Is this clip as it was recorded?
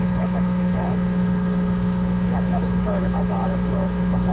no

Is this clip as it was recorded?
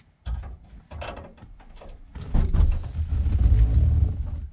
yes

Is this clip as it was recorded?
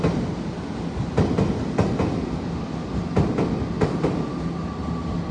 yes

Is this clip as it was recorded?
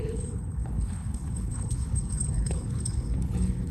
no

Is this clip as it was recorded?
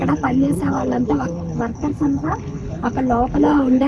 no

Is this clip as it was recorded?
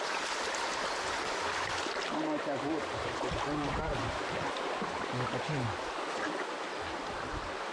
yes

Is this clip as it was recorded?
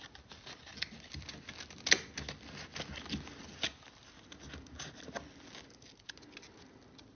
yes